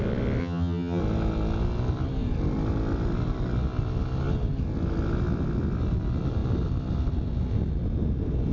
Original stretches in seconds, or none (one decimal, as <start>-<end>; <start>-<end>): 0.0-0.4; 1.0-8.5